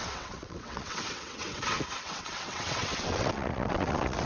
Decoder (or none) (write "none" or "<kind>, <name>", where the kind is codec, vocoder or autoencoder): vocoder, WaveNeXt